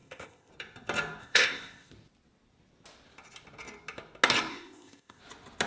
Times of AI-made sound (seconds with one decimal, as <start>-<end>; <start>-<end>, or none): 0.0-0.5; 1.2-1.9; 4.5-5.2